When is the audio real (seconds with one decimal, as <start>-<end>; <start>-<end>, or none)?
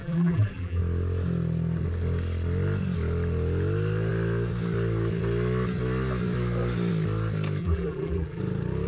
0.8-7.6; 8.4-8.9